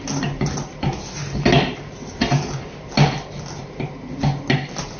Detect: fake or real real